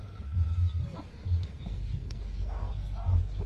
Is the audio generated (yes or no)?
yes